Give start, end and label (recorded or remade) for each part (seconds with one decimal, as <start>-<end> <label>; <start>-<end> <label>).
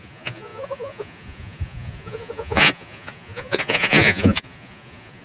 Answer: 0.0-5.2 remade